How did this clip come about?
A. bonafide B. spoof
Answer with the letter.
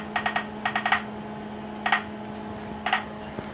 A